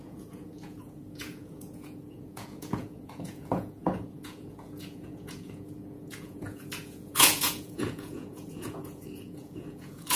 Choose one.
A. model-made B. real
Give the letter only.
A